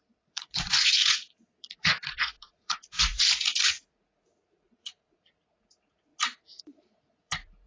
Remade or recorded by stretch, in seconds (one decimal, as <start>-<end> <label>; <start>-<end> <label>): 0.0-6.1 remade; 6.1-6.6 recorded; 6.6-7.7 remade